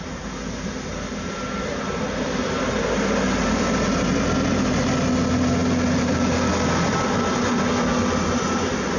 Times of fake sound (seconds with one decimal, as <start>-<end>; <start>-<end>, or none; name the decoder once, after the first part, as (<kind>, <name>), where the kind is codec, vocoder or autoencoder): none